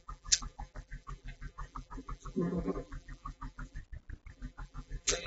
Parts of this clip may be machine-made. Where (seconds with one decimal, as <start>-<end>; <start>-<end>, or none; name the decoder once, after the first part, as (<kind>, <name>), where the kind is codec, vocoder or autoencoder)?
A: 0.0-3.8 (vocoder, BigVGAN v2); 4.3-5.3